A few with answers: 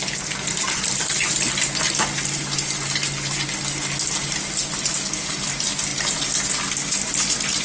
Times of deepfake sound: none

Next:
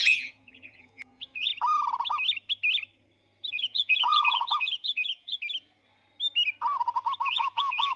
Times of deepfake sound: 0.0-1.5 (vocoder, Vocos); 3.5-5.4; 7.3-8.0

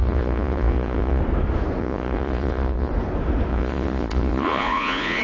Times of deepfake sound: 0.0-1.2 (vocoder, Vocos); 1.8-2.9; 3.5-5.2

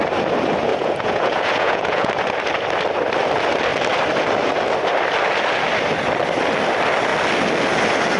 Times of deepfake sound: 0.7-2.1 (vocoder, Vocos)

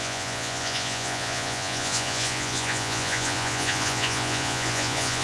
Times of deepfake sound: 0.0-5.2 (vocoder, Vocos)